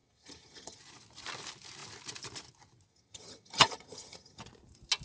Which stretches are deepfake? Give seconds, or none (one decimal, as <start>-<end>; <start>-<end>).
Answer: 0.0-0.8; 2.9-4.4